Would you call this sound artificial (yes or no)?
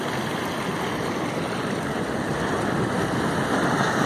no